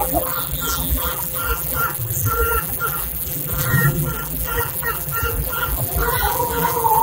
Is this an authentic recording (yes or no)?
no